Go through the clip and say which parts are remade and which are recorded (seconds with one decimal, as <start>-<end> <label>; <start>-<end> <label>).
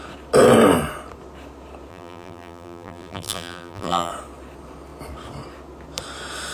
0.0-1.9 recorded; 1.9-4.1 remade; 4.1-6.5 recorded